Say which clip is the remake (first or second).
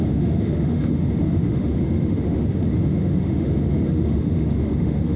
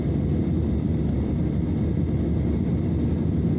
first